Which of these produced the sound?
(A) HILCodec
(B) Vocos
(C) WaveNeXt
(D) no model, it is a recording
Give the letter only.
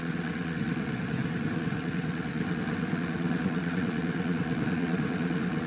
C